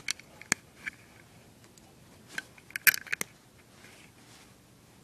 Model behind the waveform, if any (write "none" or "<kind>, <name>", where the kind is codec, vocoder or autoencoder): none